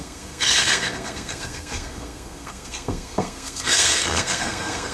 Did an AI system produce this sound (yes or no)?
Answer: yes